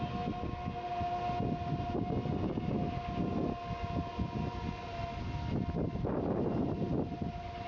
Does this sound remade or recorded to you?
recorded